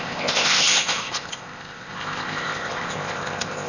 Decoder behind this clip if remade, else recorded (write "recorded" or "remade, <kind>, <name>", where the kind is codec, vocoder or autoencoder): remade, codec, ZipCodec